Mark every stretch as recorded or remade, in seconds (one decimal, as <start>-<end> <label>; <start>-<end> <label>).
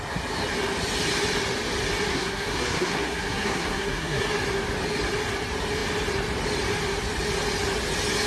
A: 0.0-2.1 recorded; 2.1-4.2 remade; 4.2-8.3 recorded